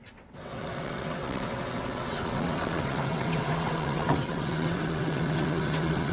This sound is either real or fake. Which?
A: fake